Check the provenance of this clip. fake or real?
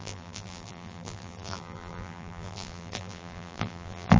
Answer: fake